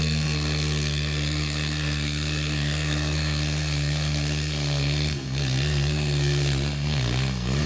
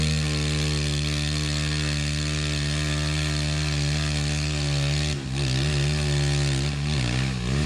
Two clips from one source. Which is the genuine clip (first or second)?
second